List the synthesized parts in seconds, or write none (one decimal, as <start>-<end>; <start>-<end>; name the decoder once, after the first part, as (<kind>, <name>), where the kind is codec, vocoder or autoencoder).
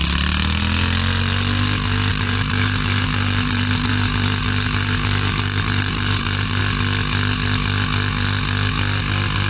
2.1-6.6 (vocoder, BigVGAN v2)